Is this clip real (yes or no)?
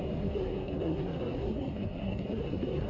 no